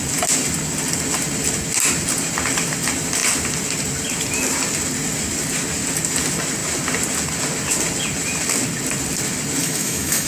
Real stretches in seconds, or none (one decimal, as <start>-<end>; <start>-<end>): 0.0-9.6